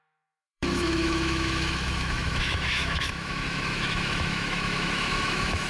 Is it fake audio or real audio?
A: fake